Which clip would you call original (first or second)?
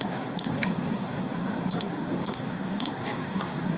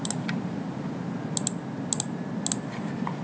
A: second